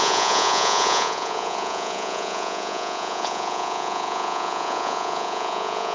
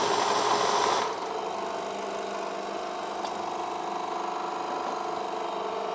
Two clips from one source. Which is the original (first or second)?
second